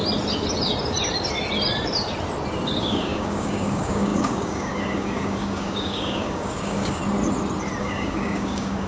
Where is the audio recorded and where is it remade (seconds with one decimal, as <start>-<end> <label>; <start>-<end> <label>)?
0.0-2.8 recorded; 2.8-7.0 remade; 7.0-7.8 recorded; 7.8-8.9 remade